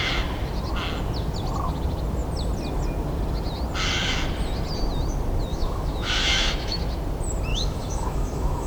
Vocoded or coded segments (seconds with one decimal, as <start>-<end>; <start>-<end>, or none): 5.5-6.8; 7.5-8.7